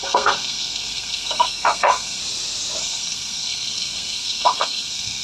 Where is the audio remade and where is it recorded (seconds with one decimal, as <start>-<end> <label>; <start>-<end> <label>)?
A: 0.0-2.2 remade; 2.2-2.8 recorded; 2.8-5.2 remade